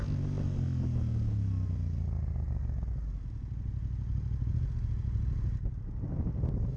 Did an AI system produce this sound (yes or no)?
no